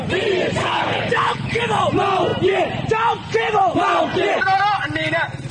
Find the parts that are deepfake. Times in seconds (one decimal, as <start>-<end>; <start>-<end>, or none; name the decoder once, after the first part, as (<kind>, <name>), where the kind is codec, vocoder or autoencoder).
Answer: 0.6-1.6 (codec, HILCodec)